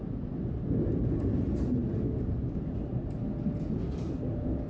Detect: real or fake real